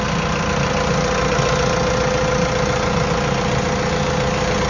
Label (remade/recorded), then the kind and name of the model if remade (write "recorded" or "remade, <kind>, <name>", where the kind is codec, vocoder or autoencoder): recorded